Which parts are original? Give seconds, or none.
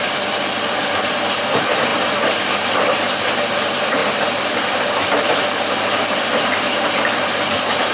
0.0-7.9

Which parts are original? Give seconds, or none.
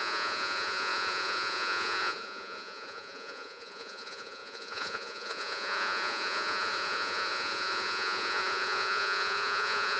none